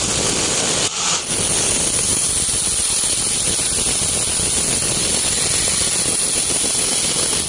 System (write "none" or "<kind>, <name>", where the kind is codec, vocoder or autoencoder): none